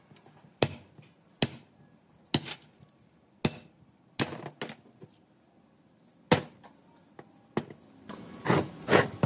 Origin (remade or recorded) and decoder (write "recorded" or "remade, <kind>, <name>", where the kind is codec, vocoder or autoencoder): recorded